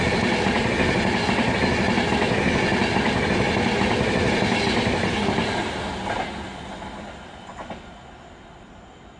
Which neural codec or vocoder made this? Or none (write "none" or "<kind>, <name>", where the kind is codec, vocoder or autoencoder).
none